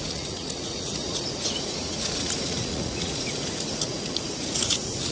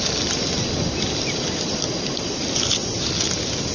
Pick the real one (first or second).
second